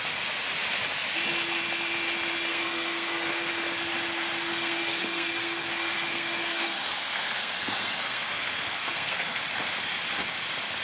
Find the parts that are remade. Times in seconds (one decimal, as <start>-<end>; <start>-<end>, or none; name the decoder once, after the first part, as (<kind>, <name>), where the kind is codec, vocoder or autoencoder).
2.5-3.5 (codec, SNAC); 4.5-9.4